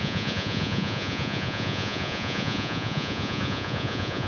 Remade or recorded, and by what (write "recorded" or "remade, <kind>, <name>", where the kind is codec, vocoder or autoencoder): remade, vocoder, Vocos